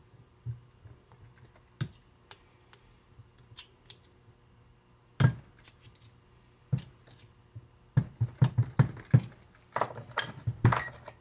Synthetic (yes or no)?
no